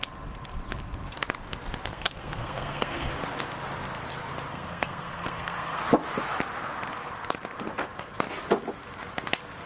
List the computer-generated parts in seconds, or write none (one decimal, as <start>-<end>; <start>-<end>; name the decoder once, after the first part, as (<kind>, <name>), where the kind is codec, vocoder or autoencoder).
1.9-3.1 (codec, SNAC); 4.5-5.8